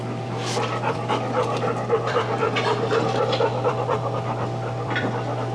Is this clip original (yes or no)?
no